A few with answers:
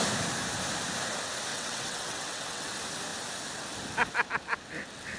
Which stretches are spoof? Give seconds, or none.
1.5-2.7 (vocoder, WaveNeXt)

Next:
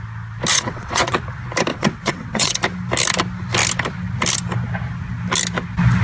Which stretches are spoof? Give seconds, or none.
0.5-1.2 (vocoder, WaveNeXt); 1.7-2.5

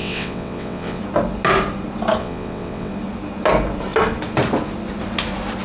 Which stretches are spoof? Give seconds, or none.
0.0-1.0 (vocoder, WaveNeXt); 2.2-2.9

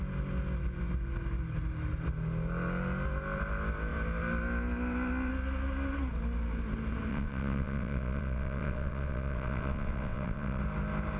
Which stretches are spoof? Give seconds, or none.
7.1-10.6 (vocoder, WaveNeXt)

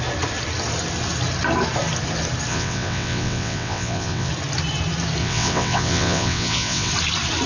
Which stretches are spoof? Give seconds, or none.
2.5-4.3 (vocoder, WaveNeXt); 5.2-6.9

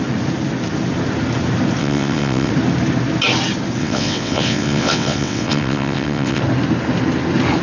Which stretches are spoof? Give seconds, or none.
1.8-2.5 (vocoder, WaveNeXt); 3.8-6.4

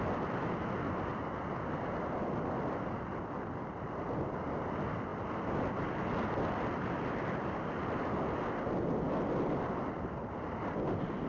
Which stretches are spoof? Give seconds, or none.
none

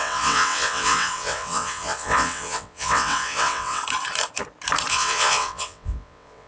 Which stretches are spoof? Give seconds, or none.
0.0-3.8 (vocoder, WaveNeXt); 4.9-6.5